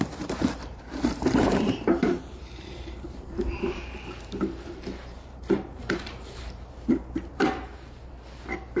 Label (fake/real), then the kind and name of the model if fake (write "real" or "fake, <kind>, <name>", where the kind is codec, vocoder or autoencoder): fake, vocoder, BigVGAN v2